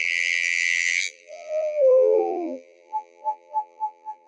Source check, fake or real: fake